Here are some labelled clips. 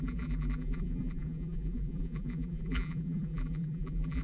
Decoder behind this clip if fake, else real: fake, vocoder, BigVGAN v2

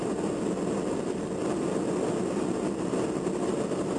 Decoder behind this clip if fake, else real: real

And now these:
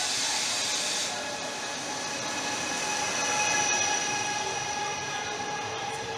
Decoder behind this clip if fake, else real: real